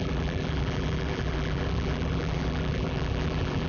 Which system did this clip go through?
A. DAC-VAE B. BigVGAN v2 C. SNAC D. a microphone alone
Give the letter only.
B